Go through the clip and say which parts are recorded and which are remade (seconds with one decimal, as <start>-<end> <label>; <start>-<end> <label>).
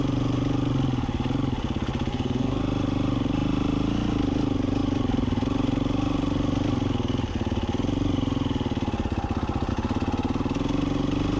0.0-2.1 recorded; 2.1-2.6 remade; 2.6-11.4 recorded